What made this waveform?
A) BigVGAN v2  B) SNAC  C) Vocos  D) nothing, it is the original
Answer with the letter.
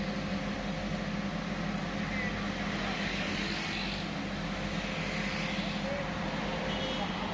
D